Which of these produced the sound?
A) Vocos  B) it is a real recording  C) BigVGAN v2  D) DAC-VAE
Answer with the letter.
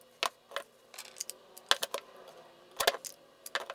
B